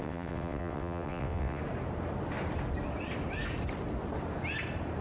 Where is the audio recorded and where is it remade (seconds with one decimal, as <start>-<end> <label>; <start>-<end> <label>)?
0.0-1.6 remade; 1.6-5.0 recorded